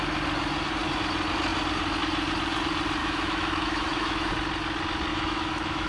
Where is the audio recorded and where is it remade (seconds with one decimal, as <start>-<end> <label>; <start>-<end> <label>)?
0.0-3.0 recorded; 3.0-4.3 remade; 4.3-5.1 recorded; 5.1-5.9 remade